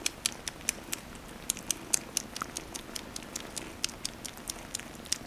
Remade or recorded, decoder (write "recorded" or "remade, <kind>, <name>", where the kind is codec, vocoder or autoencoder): recorded